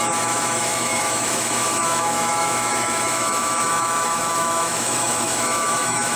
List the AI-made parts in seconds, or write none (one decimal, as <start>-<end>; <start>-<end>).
0.0-6.2